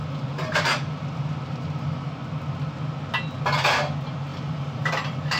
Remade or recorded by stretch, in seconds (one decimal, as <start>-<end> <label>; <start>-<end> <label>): 0.0-2.1 remade; 2.1-4.3 recorded; 4.3-4.8 remade; 4.8-5.4 recorded